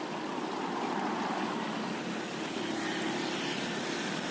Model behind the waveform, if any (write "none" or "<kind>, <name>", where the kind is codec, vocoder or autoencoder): none